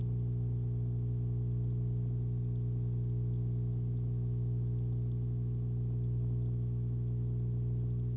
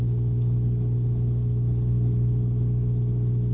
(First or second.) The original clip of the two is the first